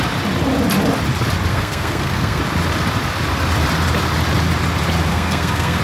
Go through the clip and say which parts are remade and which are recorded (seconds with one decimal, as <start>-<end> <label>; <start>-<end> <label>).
0.0-1.5 recorded; 1.5-2.4 remade; 2.4-5.1 recorded; 5.1-5.8 remade